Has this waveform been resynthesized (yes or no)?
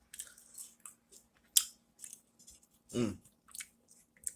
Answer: no